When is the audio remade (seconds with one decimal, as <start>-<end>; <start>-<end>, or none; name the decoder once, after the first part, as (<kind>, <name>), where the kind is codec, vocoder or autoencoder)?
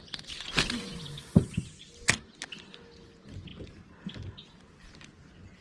none